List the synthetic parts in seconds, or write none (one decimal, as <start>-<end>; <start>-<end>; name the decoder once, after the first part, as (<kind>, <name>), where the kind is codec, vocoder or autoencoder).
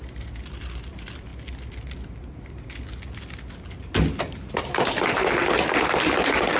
0.0-1.3 (vocoder, BigVGAN v2); 4.6-6.6